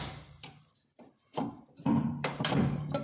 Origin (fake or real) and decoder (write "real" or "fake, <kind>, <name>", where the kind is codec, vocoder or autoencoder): fake, vocoder, BigVGAN v2